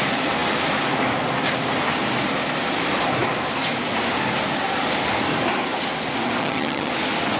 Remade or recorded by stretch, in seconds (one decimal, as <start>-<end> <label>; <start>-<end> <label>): 0.0-6.4 recorded; 6.4-6.9 remade; 6.9-7.4 recorded